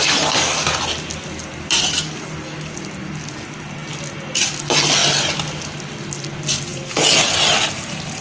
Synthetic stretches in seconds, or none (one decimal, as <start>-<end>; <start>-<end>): 6.7-7.3